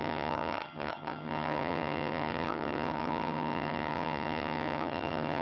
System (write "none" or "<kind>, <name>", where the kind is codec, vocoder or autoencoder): vocoder, HiFi-GAN